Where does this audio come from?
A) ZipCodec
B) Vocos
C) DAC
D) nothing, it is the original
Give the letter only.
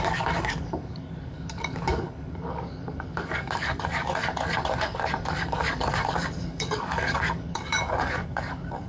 C